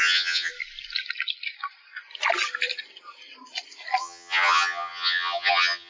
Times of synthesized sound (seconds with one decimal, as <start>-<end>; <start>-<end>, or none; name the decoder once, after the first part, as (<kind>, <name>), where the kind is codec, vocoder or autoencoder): 0.0-0.5 (vocoder, HiFi-GAN); 4.0-5.9